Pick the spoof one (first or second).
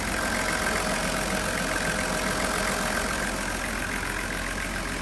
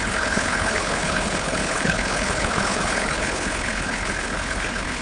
second